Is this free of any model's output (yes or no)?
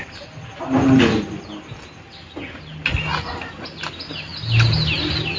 yes